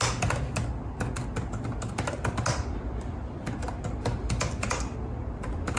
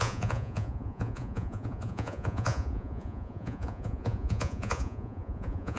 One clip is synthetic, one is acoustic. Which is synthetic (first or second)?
second